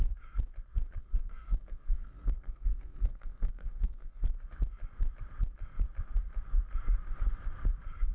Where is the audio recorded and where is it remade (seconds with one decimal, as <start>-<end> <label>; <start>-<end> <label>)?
0.0-1.0 recorded; 1.0-4.2 remade; 4.2-8.1 recorded